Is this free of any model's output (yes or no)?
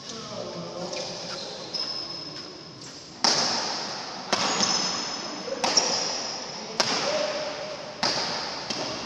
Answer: yes